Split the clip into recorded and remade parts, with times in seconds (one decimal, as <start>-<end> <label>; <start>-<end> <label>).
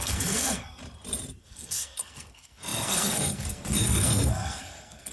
0.0-0.8 remade; 0.8-1.4 recorded; 1.4-5.1 remade